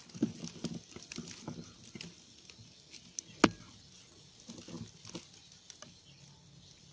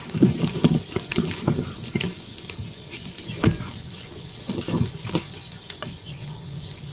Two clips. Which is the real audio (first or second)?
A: first